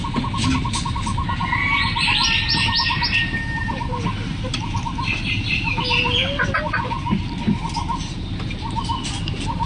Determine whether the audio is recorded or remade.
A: recorded